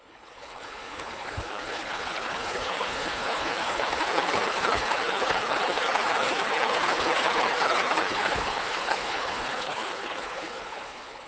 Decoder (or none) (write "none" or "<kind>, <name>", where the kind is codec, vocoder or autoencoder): codec, HILCodec